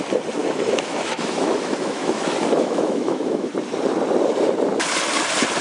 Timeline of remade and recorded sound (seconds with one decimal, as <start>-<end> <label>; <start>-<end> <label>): 0.0-0.4 recorded; 0.4-3.5 remade; 3.5-5.6 recorded